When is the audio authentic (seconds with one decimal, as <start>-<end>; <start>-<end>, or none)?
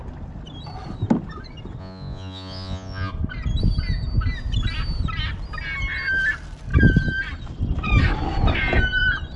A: 0.0-1.8; 3.1-9.4